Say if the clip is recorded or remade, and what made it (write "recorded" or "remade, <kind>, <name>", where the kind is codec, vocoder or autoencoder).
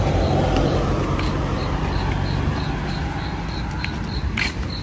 recorded